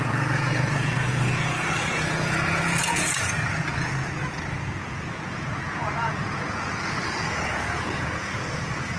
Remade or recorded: remade